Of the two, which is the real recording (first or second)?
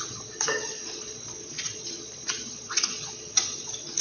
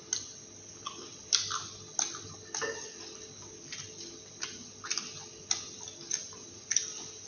second